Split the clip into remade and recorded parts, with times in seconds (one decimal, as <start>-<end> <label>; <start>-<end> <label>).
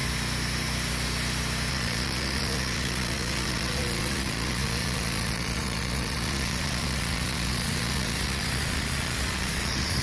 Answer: 0.0-1.7 recorded; 1.7-10.0 remade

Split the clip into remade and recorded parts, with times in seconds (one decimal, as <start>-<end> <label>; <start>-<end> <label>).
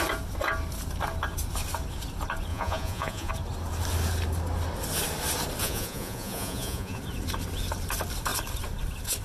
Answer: 0.0-2.5 recorded; 2.5-3.3 remade; 3.3-5.6 recorded; 5.6-7.0 remade; 7.0-9.2 recorded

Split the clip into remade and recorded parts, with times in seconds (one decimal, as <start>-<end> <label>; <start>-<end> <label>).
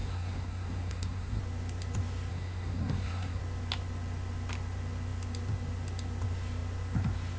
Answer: 0.0-1.4 remade; 1.4-2.3 recorded; 2.3-3.4 remade; 3.4-7.4 recorded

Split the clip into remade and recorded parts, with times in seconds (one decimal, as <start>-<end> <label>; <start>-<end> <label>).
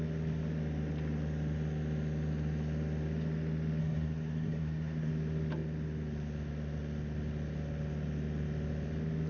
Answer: 0.0-3.8 recorded; 3.8-5.1 remade; 5.1-9.3 recorded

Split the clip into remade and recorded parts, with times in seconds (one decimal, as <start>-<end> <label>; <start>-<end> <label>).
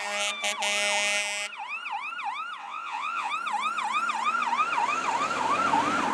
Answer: 0.0-2.6 recorded; 2.6-3.3 remade; 3.3-6.1 recorded